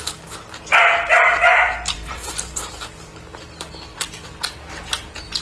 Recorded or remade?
recorded